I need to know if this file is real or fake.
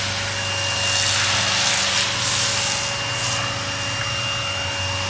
real